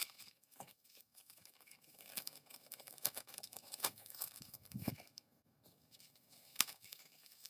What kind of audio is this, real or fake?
fake